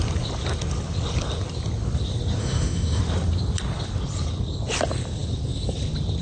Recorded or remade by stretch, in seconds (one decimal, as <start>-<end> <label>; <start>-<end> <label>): 0.0-2.4 recorded; 2.4-3.0 remade; 3.0-6.2 recorded